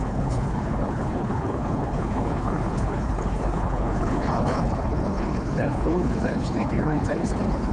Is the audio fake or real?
fake